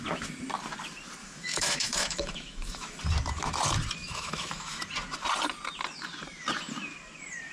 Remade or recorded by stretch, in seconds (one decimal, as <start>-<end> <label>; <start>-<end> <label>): 0.0-1.2 recorded; 1.2-3.0 remade; 3.0-4.0 recorded; 4.0-4.8 remade; 4.8-7.5 recorded